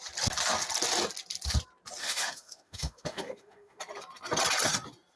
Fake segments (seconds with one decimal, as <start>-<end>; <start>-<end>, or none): 2.0-3.8